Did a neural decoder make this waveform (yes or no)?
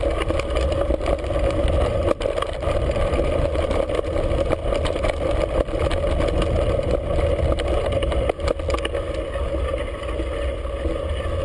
no